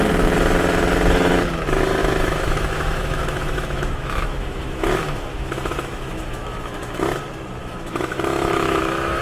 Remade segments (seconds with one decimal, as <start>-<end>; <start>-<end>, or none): 2.0-7.0; 7.6-9.2